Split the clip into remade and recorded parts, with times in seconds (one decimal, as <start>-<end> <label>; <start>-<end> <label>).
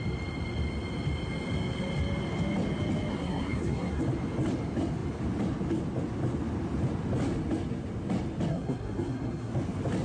0.0-3.1 recorded; 3.1-4.0 remade; 4.0-8.5 recorded; 8.5-9.5 remade; 9.5-10.0 recorded